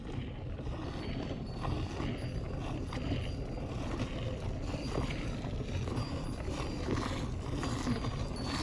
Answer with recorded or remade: recorded